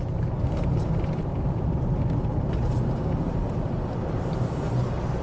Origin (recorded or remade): remade